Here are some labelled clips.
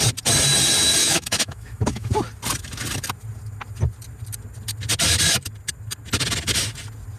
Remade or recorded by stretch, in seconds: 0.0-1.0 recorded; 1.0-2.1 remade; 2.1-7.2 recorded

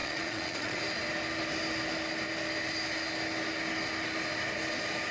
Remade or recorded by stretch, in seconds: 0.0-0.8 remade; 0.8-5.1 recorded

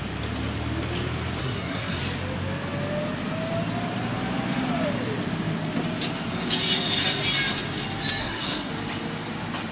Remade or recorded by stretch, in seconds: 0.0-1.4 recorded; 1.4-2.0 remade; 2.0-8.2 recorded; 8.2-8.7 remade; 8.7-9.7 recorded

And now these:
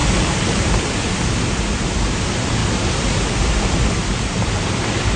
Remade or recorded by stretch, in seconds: 0.0-2.6 remade; 2.6-3.6 recorded; 3.6-5.2 remade

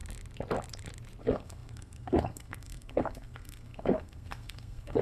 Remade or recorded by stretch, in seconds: 0.0-1.2 recorded; 1.2-5.0 remade